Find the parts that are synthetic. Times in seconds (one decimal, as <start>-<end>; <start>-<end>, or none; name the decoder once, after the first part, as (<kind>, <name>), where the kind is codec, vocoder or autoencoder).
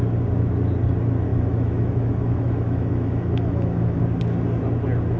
1.3-4.0 (autoencoder, DAC-VAE)